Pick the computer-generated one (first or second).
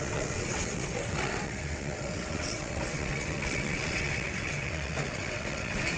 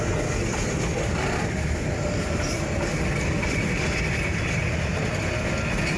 first